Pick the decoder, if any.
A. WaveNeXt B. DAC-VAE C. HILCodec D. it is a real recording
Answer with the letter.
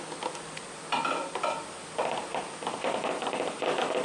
D